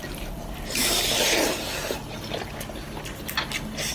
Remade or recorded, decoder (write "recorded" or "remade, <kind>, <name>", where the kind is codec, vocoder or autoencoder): recorded